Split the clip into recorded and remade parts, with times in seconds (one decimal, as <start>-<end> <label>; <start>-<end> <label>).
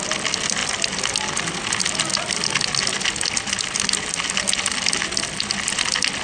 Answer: 0.0-6.2 recorded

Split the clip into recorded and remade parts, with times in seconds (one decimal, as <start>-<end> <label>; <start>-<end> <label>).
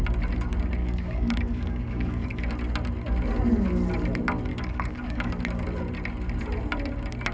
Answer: 0.0-0.8 recorded; 0.8-2.4 remade; 2.4-4.5 recorded; 4.5-5.3 remade; 5.3-7.3 recorded